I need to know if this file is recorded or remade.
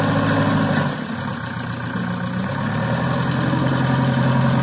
recorded